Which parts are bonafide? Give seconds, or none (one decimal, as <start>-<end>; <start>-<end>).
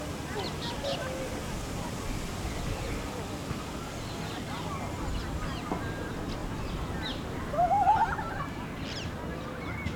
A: 0.0-6.4; 7.9-10.0